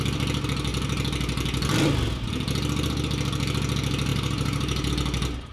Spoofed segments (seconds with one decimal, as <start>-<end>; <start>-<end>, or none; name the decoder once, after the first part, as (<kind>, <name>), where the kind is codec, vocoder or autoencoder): 4.1-4.9 (vocoder, BigVGAN v2)